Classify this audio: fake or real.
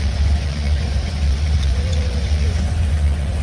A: fake